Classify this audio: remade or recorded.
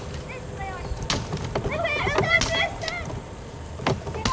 recorded